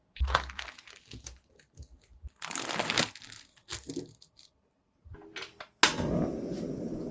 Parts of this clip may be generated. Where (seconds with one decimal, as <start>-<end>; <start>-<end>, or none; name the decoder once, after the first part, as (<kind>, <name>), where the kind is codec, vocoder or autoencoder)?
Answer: none